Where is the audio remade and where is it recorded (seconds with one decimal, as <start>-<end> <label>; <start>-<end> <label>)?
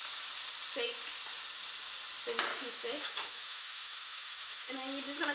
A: 0.0-2.5 recorded; 2.5-4.7 remade; 4.7-5.3 recorded